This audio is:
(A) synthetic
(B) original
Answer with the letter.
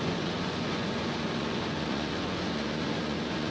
A